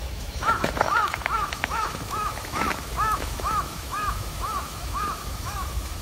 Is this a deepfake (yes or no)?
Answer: yes